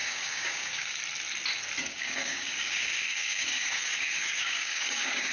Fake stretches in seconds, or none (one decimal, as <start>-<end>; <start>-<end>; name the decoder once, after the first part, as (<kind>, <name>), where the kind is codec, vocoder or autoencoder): 0.0-0.9 (codec, DAC); 1.8-5.3